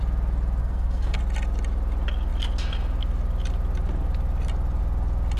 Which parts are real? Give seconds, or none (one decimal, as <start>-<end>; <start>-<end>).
0.0-0.6; 1.2-5.4